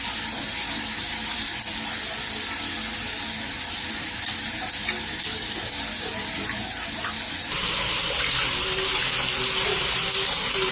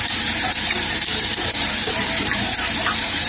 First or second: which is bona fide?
first